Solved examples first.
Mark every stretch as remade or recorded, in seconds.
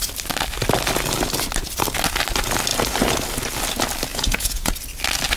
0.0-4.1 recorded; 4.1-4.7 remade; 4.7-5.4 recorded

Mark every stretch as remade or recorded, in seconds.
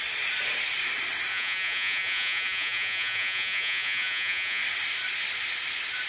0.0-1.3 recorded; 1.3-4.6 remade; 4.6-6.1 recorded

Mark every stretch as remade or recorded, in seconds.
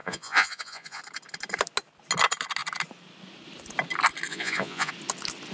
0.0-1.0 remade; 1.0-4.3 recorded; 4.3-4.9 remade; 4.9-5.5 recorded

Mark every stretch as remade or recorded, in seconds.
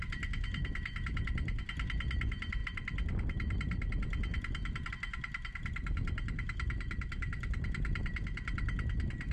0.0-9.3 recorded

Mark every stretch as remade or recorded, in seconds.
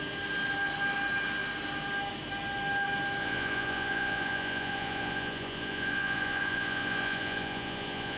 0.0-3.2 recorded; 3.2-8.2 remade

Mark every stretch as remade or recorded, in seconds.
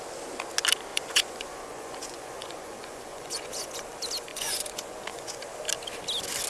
0.0-0.9 recorded; 0.9-3.8 remade; 3.8-4.3 recorded; 4.3-5.4 remade; 5.4-6.5 recorded